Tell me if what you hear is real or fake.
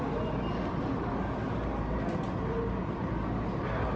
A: real